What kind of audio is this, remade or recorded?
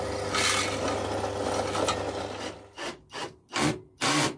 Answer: recorded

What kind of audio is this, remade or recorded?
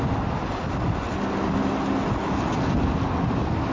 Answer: recorded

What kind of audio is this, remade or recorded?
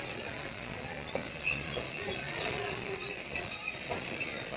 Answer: remade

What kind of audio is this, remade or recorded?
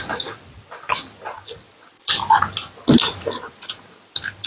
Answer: recorded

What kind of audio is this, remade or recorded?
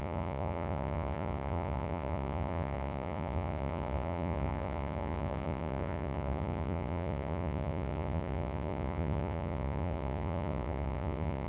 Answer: remade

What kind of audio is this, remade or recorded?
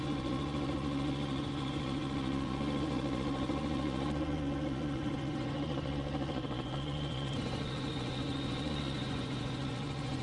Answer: remade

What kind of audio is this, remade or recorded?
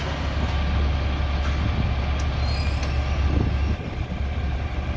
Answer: recorded